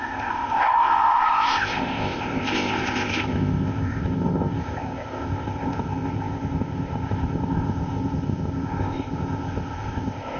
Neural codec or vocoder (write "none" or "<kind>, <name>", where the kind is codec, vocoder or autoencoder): codec, ZipCodec